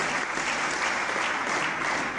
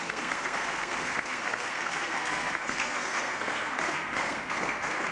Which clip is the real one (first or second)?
first